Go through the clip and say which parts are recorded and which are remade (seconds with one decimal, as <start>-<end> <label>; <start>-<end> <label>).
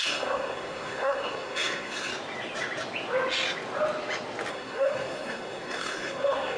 0.0-2.1 remade; 2.1-4.5 recorded; 4.5-6.6 remade